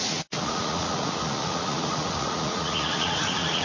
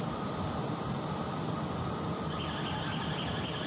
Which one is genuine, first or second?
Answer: second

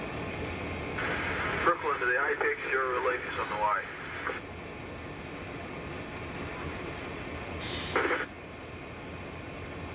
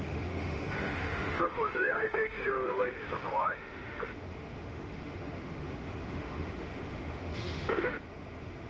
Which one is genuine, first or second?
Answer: first